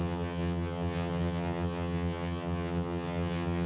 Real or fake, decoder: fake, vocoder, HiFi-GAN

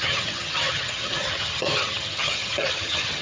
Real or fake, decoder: fake, vocoder, HiFi-GAN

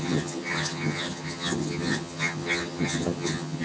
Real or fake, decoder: fake, vocoder, HiFi-GAN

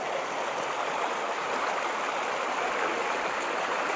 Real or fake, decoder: real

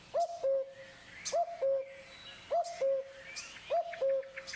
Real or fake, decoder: real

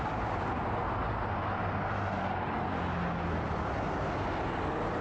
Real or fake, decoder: real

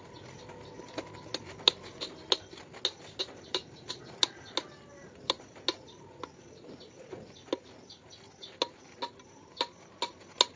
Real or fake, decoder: real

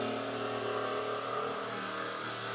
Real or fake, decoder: real